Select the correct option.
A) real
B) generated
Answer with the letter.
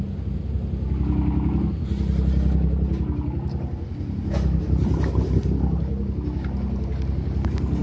A